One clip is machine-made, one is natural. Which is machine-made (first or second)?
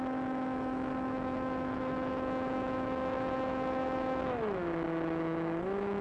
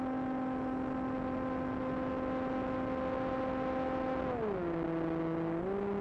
first